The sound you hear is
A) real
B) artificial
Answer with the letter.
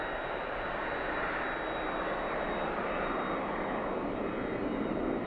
A